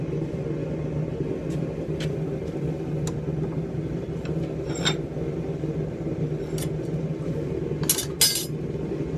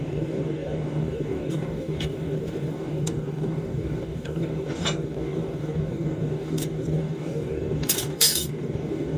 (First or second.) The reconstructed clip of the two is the second